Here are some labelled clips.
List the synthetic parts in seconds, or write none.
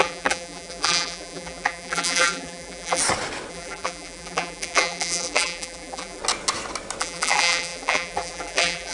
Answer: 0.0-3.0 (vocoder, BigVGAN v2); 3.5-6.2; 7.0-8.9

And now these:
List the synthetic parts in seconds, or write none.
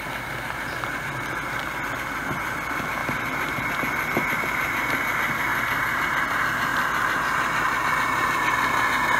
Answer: 3.0-3.7 (vocoder, BigVGAN v2)